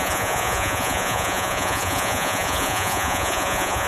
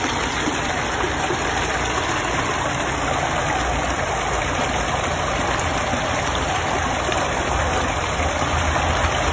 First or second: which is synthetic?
first